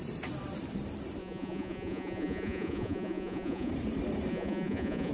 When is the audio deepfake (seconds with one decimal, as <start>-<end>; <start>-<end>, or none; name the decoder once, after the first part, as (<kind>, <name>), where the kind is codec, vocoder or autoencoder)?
1.2-3.7 (vocoder, Vocos); 4.3-5.1